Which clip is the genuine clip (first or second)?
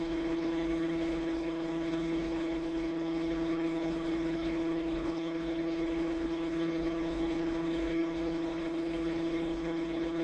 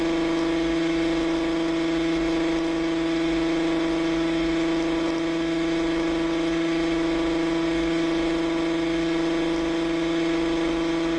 second